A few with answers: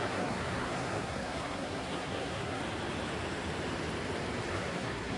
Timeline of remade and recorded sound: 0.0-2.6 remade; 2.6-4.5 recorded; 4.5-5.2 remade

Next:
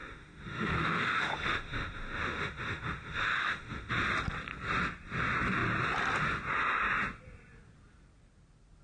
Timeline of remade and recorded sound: 0.0-3.9 remade; 3.9-8.8 recorded